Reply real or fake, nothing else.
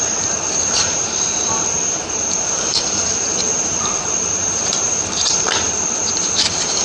fake